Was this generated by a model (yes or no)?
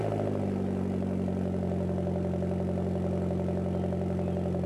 no